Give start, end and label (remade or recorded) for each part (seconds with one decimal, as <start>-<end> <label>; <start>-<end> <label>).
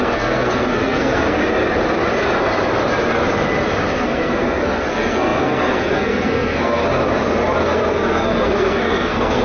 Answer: 0.0-1.4 remade; 1.4-4.0 recorded; 4.0-6.8 remade; 6.8-7.6 recorded; 7.6-9.4 remade